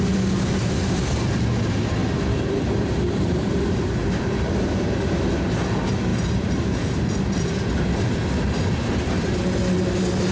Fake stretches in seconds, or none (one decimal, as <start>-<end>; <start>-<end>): 2.0-5.3